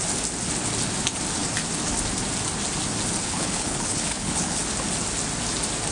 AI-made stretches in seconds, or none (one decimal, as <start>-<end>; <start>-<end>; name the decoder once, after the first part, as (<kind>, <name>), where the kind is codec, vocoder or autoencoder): 3.2-4.6 (codec, HILCodec)